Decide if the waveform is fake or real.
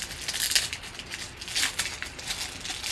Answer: real